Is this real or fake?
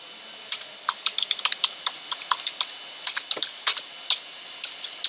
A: real